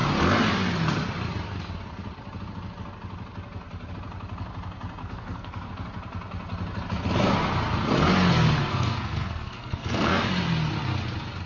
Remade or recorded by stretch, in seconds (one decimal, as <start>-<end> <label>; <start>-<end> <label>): 0.0-5.0 recorded; 5.0-5.7 remade; 5.7-8.6 recorded; 8.6-10.2 remade; 10.2-11.5 recorded